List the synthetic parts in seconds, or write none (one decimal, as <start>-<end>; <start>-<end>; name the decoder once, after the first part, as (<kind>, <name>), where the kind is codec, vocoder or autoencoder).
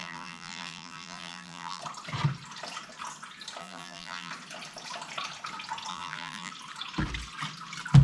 0.0-1.8 (vocoder, BigVGAN v2); 3.6-4.3; 5.9-6.5